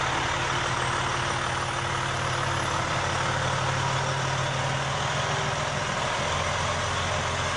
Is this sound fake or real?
real